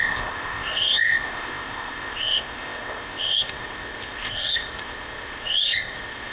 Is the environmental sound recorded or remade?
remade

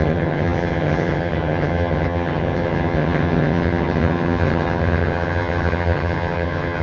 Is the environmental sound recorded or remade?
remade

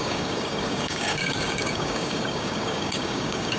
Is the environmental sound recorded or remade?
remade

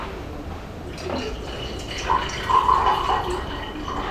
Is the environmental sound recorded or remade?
recorded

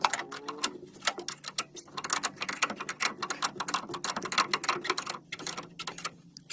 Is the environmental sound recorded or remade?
recorded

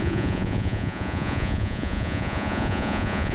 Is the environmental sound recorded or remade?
remade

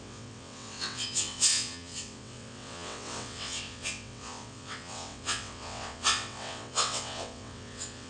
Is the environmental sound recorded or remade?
remade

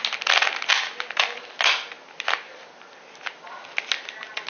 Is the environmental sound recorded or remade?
recorded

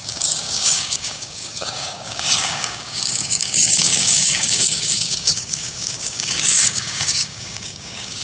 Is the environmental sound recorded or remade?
remade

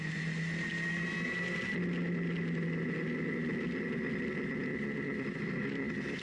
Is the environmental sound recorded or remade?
recorded